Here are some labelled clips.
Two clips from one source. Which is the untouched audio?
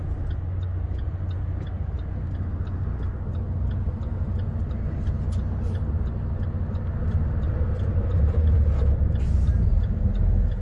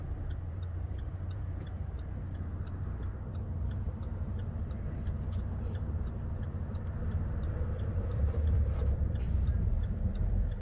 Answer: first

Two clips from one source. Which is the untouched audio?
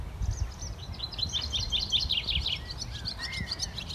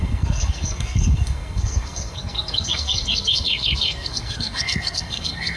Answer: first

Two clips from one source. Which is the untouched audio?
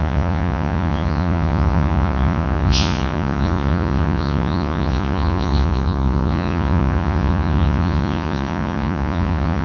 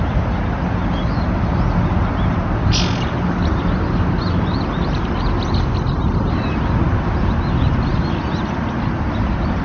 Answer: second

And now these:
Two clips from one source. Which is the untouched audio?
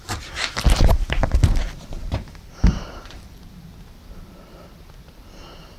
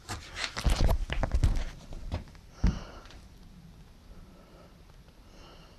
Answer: second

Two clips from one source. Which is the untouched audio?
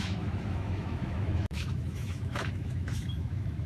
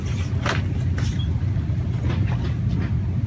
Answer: second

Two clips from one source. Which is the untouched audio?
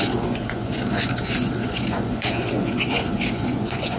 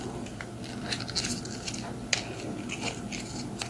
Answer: second